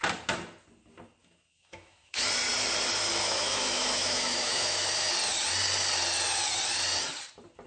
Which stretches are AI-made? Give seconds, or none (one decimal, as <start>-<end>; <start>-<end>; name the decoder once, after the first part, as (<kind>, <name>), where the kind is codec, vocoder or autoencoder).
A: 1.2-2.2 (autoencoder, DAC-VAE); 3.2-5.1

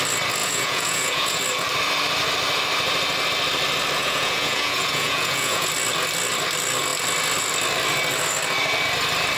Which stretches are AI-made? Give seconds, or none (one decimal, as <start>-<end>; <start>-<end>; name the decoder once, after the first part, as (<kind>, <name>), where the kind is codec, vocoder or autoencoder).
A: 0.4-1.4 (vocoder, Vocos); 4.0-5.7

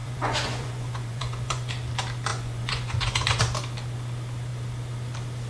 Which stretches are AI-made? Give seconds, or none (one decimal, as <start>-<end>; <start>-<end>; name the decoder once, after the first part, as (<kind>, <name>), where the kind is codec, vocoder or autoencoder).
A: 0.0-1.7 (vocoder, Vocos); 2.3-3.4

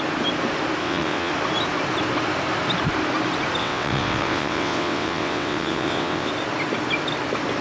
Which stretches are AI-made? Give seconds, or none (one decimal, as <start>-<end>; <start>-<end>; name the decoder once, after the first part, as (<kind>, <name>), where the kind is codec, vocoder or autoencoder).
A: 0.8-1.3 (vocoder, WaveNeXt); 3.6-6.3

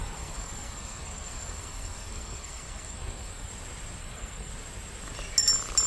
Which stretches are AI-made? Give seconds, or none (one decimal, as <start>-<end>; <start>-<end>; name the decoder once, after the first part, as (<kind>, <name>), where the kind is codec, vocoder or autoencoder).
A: 0.0-3.5 (codec, SNAC); 4.0-4.5